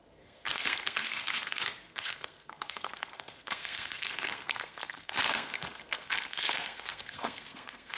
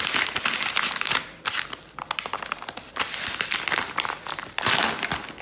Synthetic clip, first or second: first